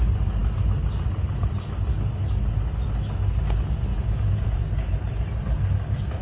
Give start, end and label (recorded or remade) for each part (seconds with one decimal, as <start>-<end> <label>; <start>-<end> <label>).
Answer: 0.0-3.9 recorded; 3.9-4.6 remade; 4.6-6.2 recorded